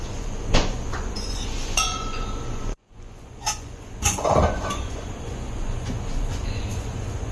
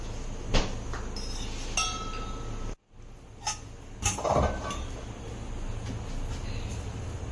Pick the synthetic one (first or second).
first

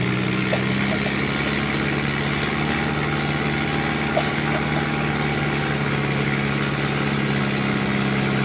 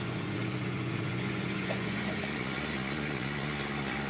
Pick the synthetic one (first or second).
second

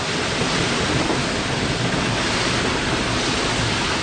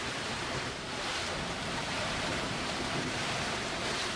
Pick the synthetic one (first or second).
second